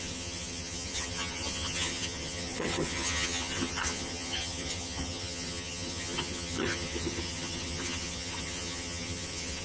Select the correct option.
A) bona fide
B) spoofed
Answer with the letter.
B